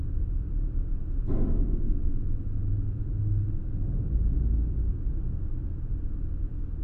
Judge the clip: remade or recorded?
recorded